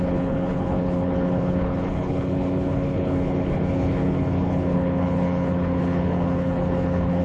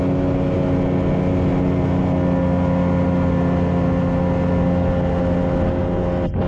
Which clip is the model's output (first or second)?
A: first